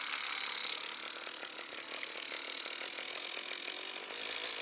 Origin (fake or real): real